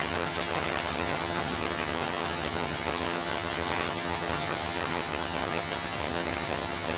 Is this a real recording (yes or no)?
no